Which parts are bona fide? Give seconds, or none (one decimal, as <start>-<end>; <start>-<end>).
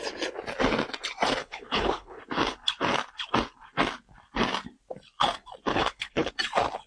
0.0-1.4; 2.2-5.7; 6.3-6.9